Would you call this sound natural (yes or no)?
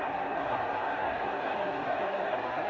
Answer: no